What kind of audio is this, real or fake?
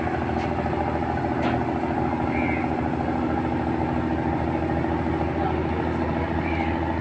real